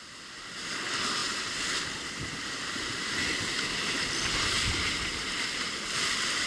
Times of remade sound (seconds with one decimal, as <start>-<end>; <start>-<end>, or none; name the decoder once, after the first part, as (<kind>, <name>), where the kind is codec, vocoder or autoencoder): none